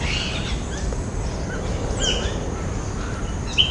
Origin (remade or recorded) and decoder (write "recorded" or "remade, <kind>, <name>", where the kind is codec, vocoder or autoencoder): recorded